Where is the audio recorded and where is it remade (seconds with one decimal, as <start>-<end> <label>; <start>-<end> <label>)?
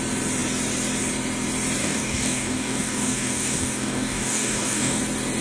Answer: 0.0-1.8 recorded; 1.8-5.0 remade; 5.0-5.4 recorded